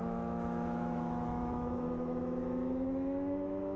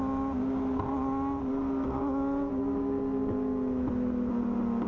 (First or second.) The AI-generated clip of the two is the first